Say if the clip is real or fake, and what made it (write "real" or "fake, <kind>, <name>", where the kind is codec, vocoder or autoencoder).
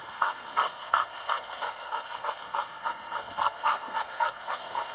fake, codec, SNAC